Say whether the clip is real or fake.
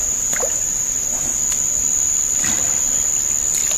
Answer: real